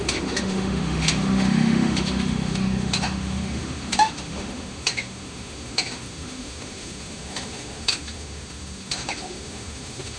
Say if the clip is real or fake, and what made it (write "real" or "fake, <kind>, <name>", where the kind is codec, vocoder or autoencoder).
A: fake, autoencoder, DAC-VAE